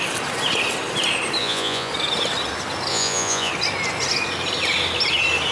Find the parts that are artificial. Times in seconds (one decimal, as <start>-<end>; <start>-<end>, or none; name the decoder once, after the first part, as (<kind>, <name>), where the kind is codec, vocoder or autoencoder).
1.4-1.9 (vocoder, Vocos); 2.9-3.5